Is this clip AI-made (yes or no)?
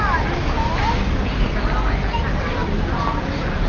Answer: no